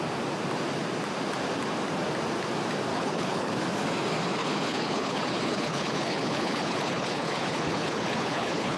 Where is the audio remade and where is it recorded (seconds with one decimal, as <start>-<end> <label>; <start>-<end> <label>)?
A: 0.0-2.9 recorded; 2.9-3.5 remade; 3.5-4.4 recorded; 4.4-8.8 remade